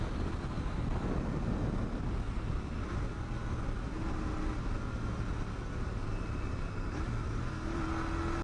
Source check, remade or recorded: recorded